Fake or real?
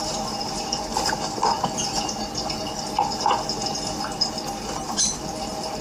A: real